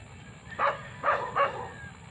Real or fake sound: real